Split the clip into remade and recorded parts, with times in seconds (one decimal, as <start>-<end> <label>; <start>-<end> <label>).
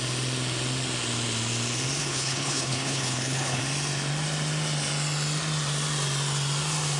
0.0-2.0 recorded; 2.0-3.6 remade; 3.6-7.0 recorded